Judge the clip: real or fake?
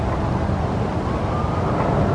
real